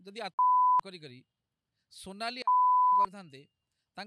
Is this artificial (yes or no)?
no